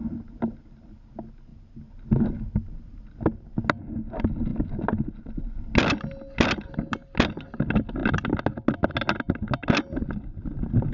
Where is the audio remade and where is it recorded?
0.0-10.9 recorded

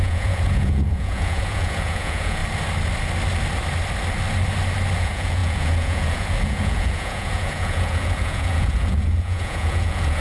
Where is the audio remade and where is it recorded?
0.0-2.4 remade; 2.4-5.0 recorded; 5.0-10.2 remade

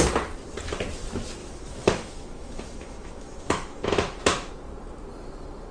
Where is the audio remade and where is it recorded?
0.0-1.4 recorded; 1.4-4.2 remade; 4.2-5.7 recorded

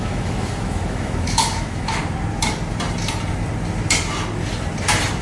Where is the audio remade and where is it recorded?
0.0-2.0 remade; 2.0-5.2 recorded